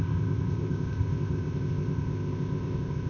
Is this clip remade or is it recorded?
remade